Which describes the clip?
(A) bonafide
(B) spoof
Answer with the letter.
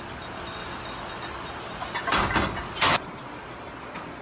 A